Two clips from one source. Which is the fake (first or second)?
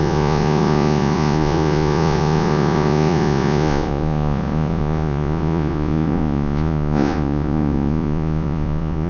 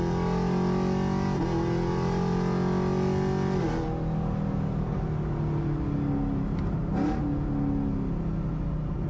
first